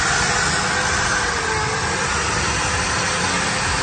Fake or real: real